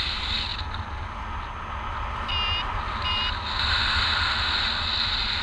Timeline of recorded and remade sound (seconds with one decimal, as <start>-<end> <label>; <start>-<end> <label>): 0.0-5.4 recorded